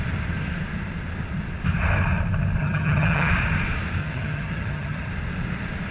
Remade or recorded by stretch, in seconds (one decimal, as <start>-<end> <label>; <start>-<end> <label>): 0.0-2.6 recorded; 2.6-3.3 remade; 3.3-4.0 recorded; 4.0-5.1 remade; 5.1-5.9 recorded